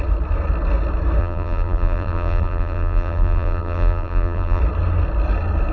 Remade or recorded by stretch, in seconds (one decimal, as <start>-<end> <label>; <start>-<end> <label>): 0.0-1.2 recorded; 1.2-4.6 remade; 4.6-5.7 recorded